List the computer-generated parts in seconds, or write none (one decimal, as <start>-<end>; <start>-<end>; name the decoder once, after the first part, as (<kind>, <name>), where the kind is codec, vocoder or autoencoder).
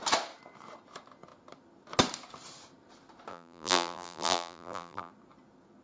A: 3.3-5.1 (vocoder, BigVGAN v2)